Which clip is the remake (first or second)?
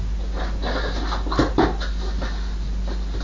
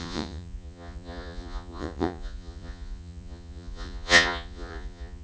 second